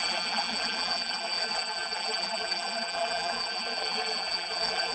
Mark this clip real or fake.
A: fake